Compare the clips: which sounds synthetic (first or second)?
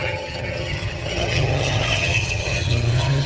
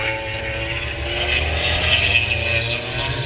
first